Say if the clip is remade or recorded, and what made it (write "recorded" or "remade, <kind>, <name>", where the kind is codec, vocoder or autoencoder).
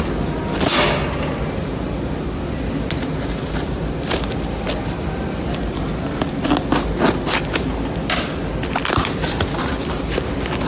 recorded